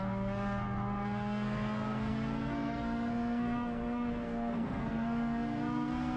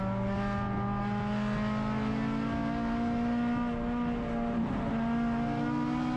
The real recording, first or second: second